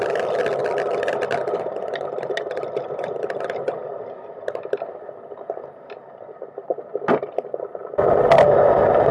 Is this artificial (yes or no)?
no